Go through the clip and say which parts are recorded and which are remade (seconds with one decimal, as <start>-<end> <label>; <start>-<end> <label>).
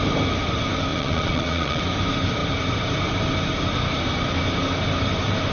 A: 0.0-0.9 recorded; 0.9-1.8 remade; 1.8-5.5 recorded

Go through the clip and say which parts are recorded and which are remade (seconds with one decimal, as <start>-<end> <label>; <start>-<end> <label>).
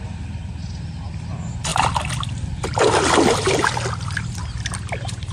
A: 0.0-5.3 recorded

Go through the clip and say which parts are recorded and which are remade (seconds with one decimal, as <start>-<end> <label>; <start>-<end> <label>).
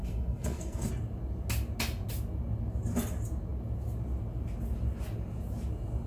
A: 0.0-0.9 remade; 0.9-6.1 recorded